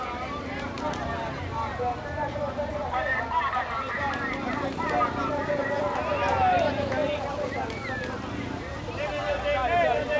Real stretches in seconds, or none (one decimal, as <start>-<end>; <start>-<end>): 0.0-10.2